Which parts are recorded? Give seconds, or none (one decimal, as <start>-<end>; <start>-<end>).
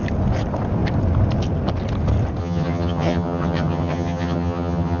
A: 0.0-2.4